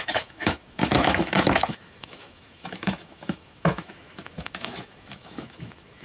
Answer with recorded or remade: remade